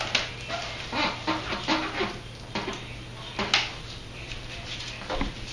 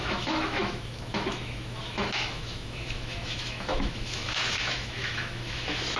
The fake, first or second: second